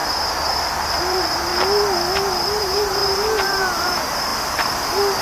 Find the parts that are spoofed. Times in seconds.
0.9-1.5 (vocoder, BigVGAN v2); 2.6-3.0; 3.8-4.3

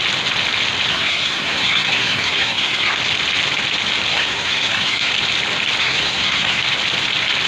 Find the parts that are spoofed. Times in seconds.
0.9-3.0 (codec, SNAC); 4.1-5.1; 5.8-6.6

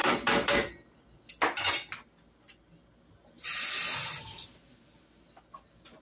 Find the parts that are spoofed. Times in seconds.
0.0-3.6 (vocoder, BigVGAN v2)